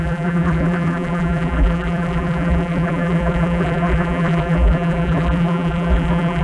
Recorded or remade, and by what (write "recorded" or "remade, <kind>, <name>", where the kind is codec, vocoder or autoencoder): remade, vocoder, BigVGAN v2